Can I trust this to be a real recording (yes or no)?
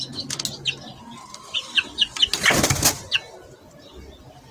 yes